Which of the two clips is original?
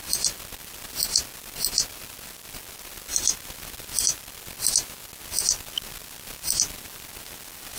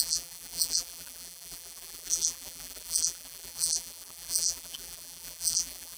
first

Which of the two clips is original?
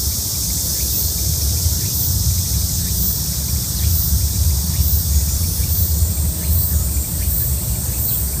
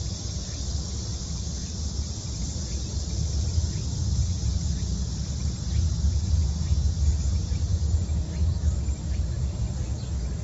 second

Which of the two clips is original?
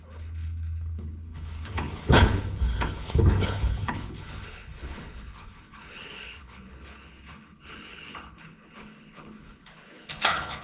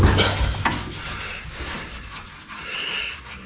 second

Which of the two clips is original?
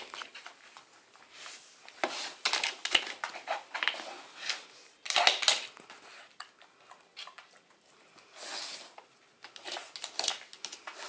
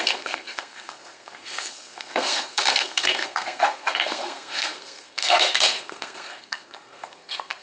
first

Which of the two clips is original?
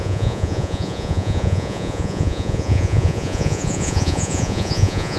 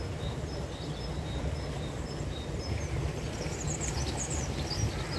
second